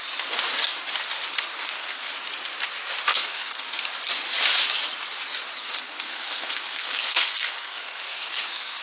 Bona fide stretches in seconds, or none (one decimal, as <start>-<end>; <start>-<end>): 0.0-1.5; 2.1-3.1; 3.8-5.6